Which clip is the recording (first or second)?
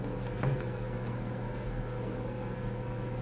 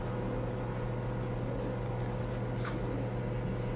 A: second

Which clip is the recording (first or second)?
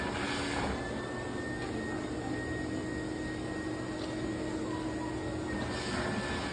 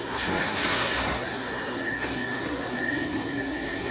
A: first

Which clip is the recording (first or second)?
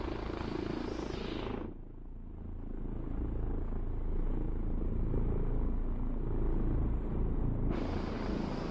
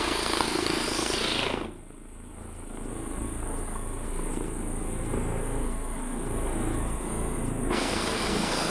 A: first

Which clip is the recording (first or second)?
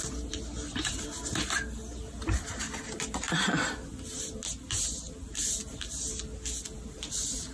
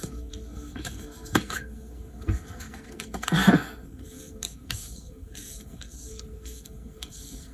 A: first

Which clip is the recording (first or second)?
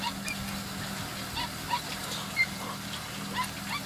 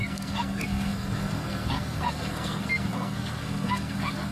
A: first